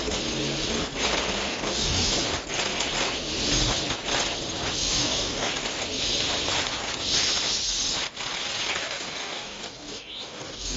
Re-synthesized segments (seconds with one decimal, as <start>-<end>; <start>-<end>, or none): 1.5-2.1; 4.8-5.5; 8.8-10.8